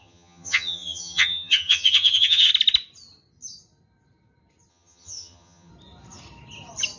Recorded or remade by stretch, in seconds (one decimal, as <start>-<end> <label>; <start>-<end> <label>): 0.0-2.5 remade; 2.5-4.7 recorded; 4.7-5.7 remade; 5.7-7.0 recorded